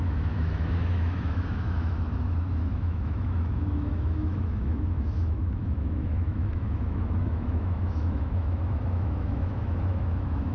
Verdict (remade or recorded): remade